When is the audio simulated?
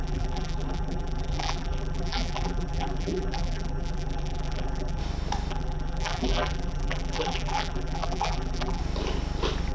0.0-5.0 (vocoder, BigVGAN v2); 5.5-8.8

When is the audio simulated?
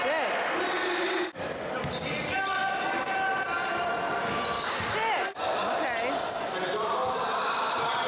none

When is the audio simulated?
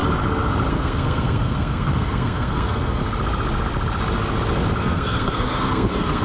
0.7-3.0 (codec, SNAC); 4.8-6.2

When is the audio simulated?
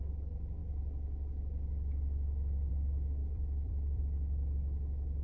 3.2-4.0 (vocoder, BigVGAN v2)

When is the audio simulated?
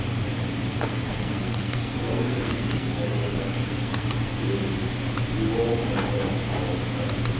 0.7-4.6 (codec, SNAC)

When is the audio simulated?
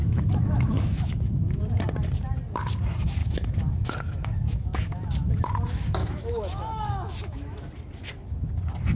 0.0-1.6 (autoencoder, DAC-VAE); 3.2-5.4; 6.0-7.6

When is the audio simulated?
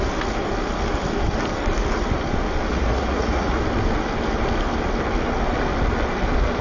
2.7-3.6 (vocoder, Vocos)